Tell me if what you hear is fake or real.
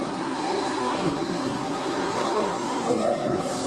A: fake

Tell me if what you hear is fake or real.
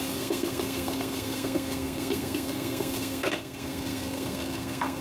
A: fake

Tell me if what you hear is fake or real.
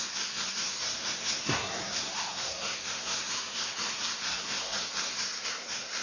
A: fake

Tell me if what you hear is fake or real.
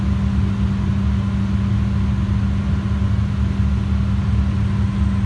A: real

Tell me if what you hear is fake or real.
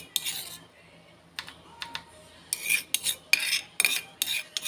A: real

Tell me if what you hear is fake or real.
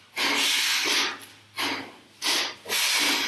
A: real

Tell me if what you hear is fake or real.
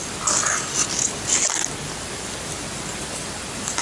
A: real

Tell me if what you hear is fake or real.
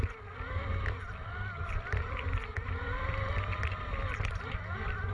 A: real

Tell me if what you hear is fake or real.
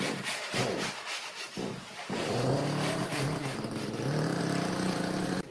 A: real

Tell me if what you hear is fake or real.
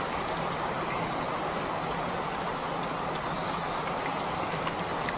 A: real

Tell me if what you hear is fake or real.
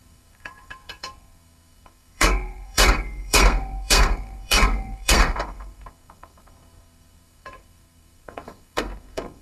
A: fake